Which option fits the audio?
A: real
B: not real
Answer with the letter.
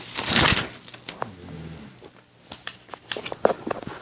A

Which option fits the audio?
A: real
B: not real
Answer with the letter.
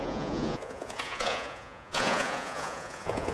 B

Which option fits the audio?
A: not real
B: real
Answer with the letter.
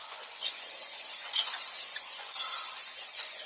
A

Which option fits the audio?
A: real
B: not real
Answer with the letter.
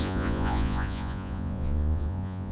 B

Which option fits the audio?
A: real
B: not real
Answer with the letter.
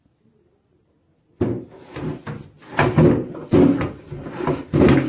A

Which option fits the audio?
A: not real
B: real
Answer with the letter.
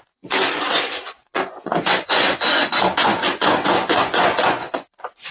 A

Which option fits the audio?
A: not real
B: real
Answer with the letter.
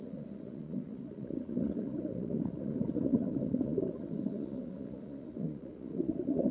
A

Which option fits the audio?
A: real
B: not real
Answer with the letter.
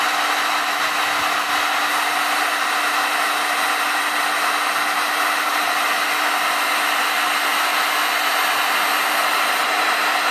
A